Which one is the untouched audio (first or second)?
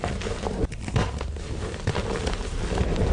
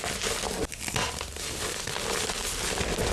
second